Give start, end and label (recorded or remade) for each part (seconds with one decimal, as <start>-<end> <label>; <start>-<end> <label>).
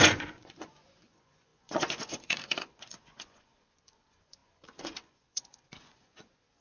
0.0-6.6 remade